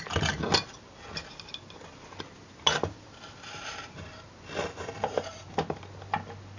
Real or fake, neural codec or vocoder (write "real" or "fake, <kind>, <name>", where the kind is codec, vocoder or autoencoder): real